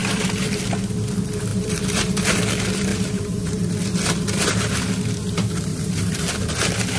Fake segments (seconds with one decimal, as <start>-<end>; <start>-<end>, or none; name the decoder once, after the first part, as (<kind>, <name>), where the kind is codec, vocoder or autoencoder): 0.0-0.5 (vocoder, BigVGAN v2); 1.5-2.4; 2.9-3.7; 5.7-6.3